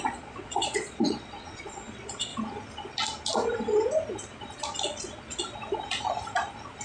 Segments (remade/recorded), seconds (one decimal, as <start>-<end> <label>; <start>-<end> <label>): 0.0-2.3 remade; 2.3-6.8 recorded